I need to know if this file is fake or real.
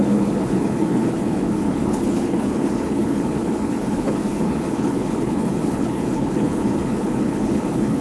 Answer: fake